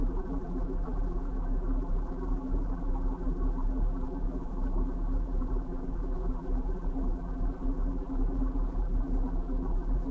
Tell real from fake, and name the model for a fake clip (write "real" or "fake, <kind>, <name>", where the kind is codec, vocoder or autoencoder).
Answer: fake, vocoder, BigVGAN v2